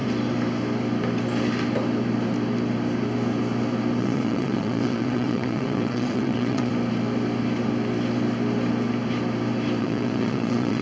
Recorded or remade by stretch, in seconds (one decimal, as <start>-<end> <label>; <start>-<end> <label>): 0.0-4.0 recorded; 4.0-6.7 remade; 6.7-9.8 recorded; 9.8-10.8 remade